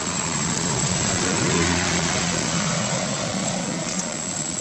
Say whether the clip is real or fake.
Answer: fake